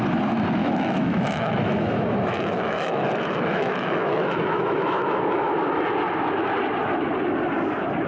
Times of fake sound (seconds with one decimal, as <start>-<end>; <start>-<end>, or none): 0.6-5.5